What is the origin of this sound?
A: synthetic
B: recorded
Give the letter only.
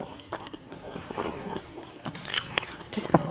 A